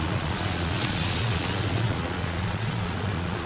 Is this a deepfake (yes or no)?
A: yes